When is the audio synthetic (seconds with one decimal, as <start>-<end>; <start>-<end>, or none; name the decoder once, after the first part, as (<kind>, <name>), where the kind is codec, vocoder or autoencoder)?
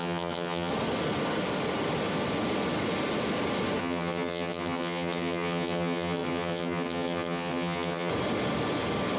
0.0-0.7 (vocoder, HiFi-GAN); 3.8-8.1